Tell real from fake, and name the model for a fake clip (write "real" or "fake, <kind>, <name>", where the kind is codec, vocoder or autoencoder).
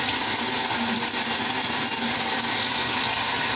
real